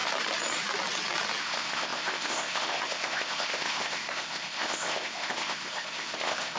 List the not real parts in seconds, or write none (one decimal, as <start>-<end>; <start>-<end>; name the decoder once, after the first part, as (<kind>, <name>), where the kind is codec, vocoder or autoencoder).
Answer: 1.4-6.6 (codec, ZipCodec)